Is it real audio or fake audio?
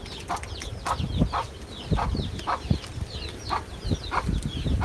real